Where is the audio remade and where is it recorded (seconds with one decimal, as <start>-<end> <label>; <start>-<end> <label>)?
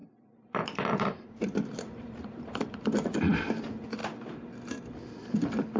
0.0-3.2 remade; 3.2-5.8 recorded